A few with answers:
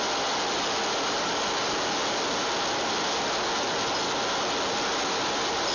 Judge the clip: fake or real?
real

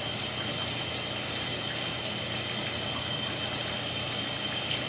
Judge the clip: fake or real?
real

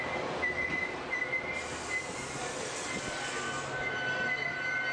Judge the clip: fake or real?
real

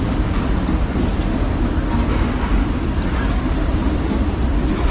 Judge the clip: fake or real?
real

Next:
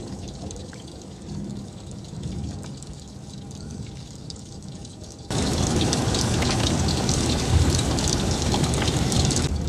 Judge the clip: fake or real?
fake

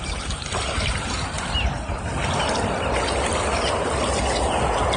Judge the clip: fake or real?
real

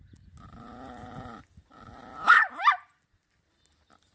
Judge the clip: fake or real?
real